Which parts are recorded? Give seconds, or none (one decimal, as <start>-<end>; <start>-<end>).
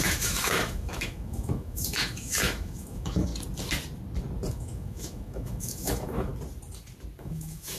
3.3-4.5; 6.3-7.2